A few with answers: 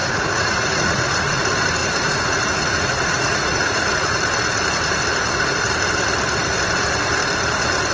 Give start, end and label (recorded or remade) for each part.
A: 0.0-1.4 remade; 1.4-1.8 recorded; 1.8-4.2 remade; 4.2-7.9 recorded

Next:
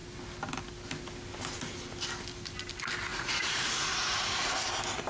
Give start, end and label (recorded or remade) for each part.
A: 0.0-3.1 recorded; 3.1-4.5 remade; 4.5-5.1 recorded

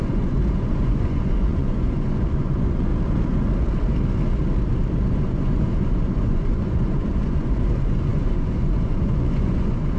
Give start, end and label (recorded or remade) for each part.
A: 0.0-2.9 remade; 2.9-5.1 recorded; 5.1-10.0 remade